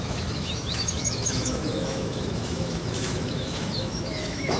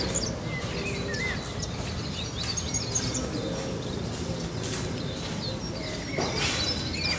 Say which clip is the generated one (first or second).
first